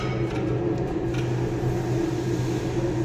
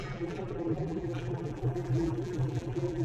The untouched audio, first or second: first